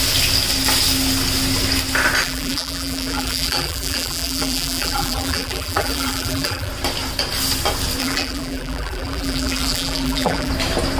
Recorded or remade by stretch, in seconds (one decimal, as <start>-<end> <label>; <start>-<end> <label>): 0.0-2.2 recorded; 2.2-6.7 remade; 6.7-8.0 recorded; 8.0-10.5 remade; 10.5-11.0 recorded